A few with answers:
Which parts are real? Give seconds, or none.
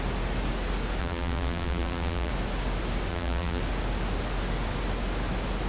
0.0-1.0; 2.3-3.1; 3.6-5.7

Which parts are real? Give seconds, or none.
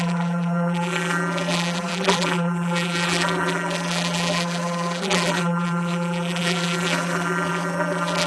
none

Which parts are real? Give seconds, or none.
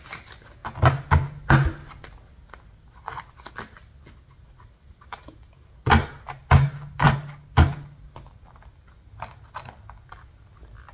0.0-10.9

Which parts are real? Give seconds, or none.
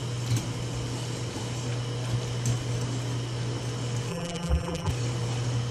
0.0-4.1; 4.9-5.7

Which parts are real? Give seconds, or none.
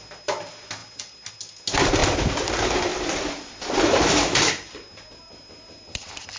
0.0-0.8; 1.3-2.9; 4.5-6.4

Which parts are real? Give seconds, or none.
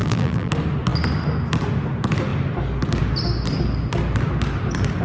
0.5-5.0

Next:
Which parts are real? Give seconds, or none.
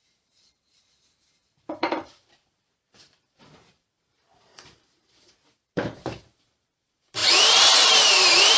none